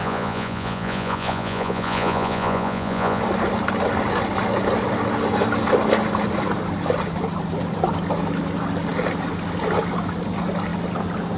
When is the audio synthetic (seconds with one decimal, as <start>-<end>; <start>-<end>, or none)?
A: 0.0-3.2